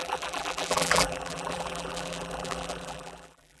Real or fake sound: fake